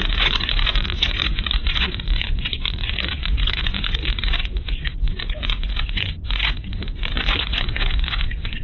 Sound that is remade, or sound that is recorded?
remade